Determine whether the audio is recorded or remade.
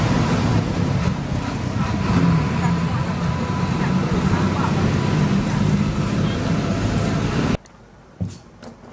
recorded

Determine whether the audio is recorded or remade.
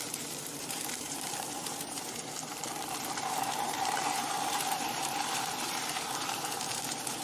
remade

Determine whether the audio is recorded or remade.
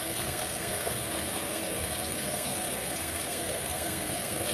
remade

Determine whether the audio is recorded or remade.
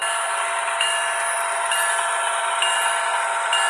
recorded